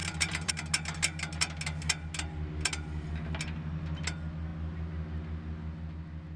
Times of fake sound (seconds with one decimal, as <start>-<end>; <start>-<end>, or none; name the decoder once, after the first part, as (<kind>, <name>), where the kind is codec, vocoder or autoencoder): 0.0-0.5 (vocoder, BigVGAN v2)